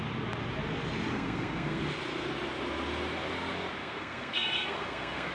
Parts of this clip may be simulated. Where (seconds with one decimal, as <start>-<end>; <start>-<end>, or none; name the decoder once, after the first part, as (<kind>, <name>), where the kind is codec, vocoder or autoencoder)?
1.1-1.8 (codec, SNAC); 3.8-5.3

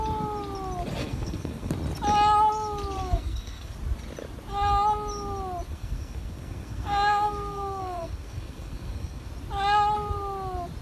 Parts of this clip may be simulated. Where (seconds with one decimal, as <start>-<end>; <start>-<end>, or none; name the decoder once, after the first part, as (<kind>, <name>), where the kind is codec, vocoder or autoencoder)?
1.0-1.7 (codec, SNAC); 3.0-3.7; 5.7-9.3

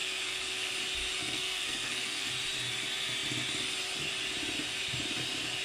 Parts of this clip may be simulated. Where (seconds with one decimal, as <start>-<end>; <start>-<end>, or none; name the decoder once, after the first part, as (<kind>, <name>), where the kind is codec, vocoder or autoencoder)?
0.0-0.7 (codec, SNAC); 1.2-2.3